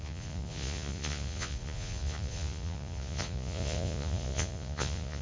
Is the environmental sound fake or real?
fake